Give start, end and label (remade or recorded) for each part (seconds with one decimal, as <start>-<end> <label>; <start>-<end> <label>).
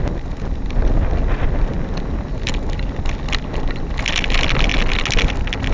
0.0-5.7 recorded